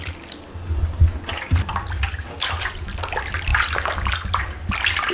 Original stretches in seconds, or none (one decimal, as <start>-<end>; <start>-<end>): 0.0-5.1